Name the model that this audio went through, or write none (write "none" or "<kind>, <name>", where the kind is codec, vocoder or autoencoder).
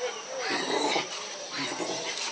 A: vocoder, BigVGAN v2